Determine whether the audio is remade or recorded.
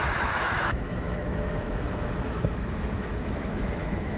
remade